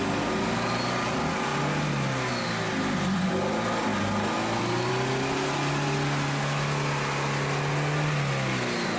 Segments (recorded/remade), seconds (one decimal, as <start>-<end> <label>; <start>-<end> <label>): 0.0-9.0 recorded